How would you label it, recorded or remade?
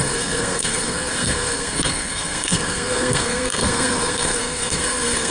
remade